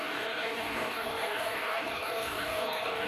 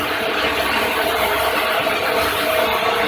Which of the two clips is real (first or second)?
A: second